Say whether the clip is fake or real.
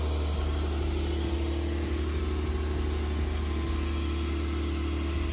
real